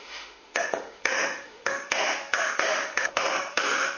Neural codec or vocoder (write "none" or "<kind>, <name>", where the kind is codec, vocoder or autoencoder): autoencoder, DAC-VAE